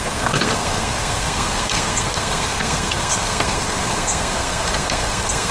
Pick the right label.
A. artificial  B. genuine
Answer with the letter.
A